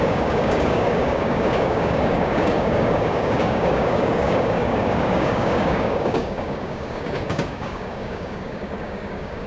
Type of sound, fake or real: fake